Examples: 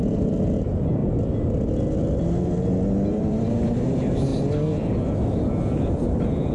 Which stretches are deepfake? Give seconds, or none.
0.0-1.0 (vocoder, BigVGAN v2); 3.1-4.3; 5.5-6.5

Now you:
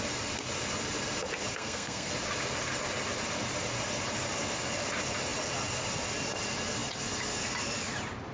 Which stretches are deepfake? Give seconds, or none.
1.5-2.1 (codec, SNAC)

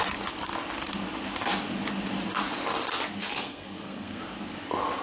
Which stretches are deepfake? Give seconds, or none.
3.3-4.2 (codec, SNAC)